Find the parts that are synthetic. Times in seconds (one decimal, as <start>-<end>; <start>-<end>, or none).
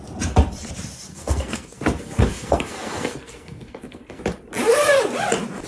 1.1-4.2